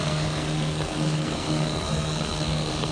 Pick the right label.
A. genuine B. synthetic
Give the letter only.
B